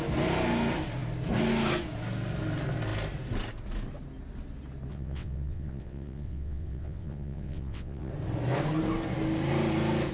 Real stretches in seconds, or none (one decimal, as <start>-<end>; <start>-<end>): 0.0-4.9; 8.1-10.1